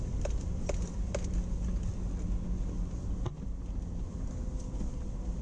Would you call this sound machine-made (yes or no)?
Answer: no